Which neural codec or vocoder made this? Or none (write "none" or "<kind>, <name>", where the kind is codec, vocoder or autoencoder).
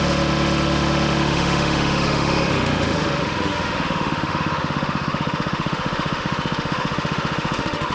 autoencoder, DAC-VAE